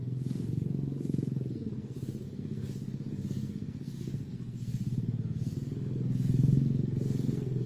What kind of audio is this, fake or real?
fake